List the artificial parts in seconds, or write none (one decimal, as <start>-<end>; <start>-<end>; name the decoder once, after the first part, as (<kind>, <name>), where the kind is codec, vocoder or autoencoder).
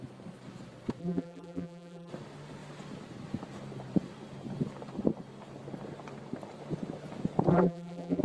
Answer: 1.0-2.1 (vocoder, BigVGAN v2); 7.5-8.2